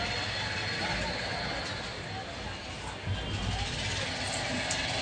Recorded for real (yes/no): yes